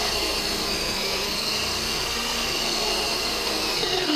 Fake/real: fake